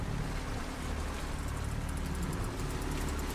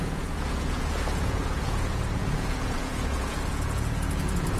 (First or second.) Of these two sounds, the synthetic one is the second